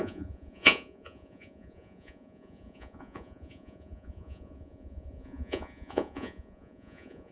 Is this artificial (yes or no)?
yes